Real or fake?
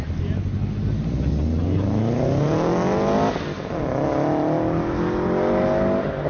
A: real